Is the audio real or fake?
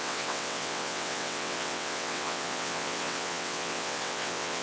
fake